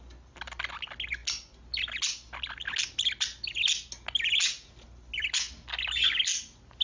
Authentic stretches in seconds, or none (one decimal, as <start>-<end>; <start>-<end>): 0.0-6.8